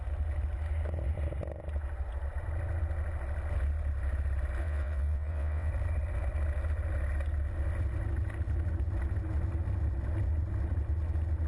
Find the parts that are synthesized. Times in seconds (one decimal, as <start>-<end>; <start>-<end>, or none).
4.6-5.7